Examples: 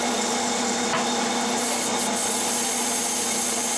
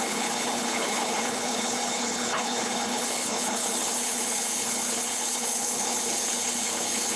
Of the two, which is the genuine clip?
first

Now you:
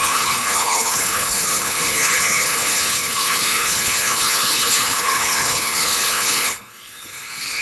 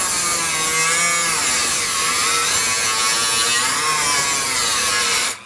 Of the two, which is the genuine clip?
second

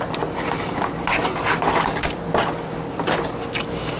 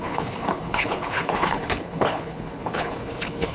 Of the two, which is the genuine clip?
first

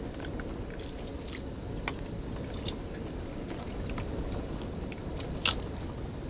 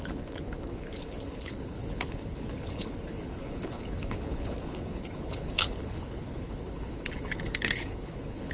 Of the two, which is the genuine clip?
first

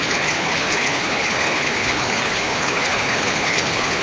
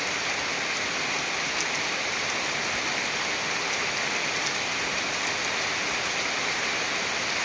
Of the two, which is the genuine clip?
second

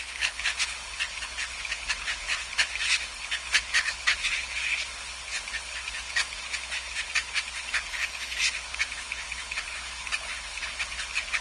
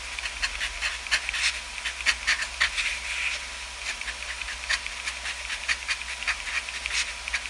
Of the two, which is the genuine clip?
second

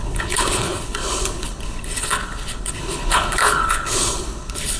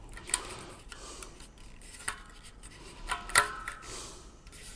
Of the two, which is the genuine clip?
second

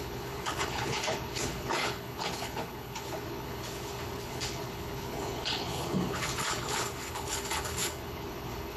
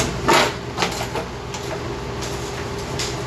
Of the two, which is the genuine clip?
second